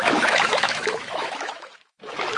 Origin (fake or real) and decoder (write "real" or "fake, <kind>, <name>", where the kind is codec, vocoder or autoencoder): fake, autoencoder, DAC-VAE